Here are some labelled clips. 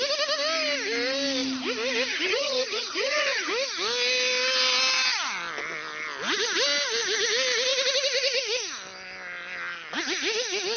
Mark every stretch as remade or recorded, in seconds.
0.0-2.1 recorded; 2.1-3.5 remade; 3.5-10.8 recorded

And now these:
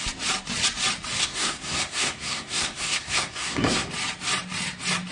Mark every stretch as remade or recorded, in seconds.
0.0-1.2 recorded; 1.2-3.9 remade; 3.9-5.1 recorded

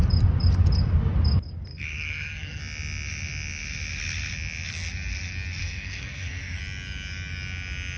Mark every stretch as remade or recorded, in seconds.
0.0-1.7 recorded; 1.7-2.6 remade; 2.6-5.6 recorded; 5.6-6.6 remade; 6.6-8.0 recorded

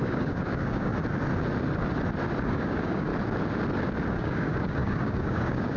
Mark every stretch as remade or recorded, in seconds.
0.0-0.9 remade; 0.9-2.5 recorded; 2.5-3.1 remade; 3.1-4.1 recorded; 4.1-5.8 remade

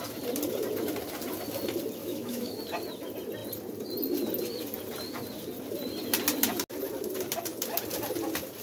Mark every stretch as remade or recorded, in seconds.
0.0-2.0 recorded; 2.0-2.6 remade; 2.6-8.6 recorded

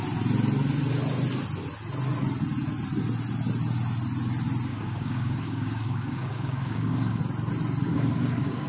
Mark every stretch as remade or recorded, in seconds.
0.0-4.7 recorded; 4.7-7.2 remade; 7.2-7.9 recorded; 7.9-8.7 remade

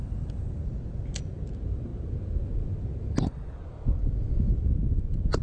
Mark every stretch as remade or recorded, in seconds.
0.0-5.4 recorded